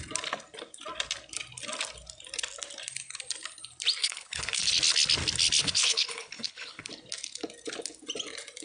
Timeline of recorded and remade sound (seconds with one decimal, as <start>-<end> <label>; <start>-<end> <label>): 0.0-4.0 recorded; 4.0-4.7 remade; 4.7-5.6 recorded; 5.6-6.9 remade; 6.9-8.6 recorded